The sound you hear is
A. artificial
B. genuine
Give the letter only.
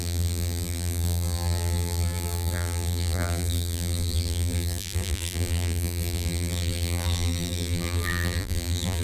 A